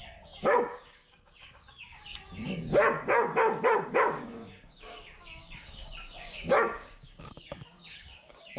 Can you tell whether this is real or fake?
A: fake